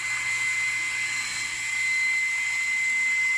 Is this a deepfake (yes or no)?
no